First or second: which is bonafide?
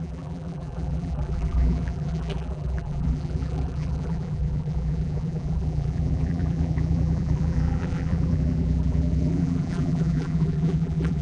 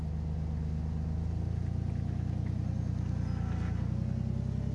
second